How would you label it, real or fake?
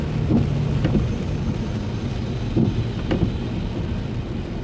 real